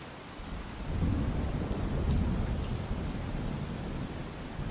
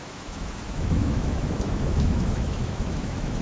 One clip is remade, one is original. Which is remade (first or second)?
second